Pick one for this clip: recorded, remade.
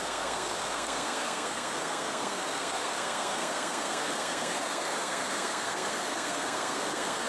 remade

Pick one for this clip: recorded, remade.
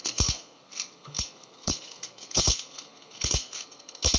remade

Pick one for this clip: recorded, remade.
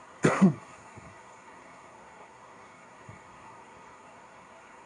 remade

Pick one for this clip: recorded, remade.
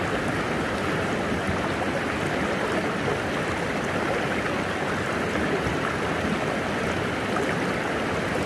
recorded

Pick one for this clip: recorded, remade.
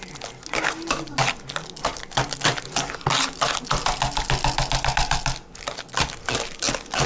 recorded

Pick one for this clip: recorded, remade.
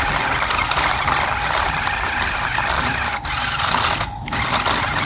recorded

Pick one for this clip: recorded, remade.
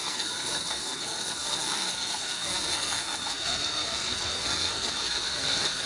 remade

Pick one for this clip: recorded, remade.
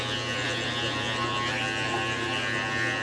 recorded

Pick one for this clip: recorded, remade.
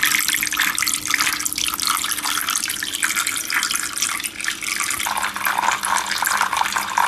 recorded